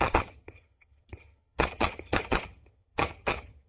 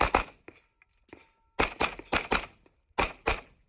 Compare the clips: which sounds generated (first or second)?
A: first